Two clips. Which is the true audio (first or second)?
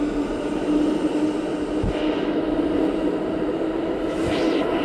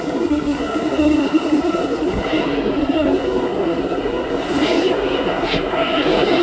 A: first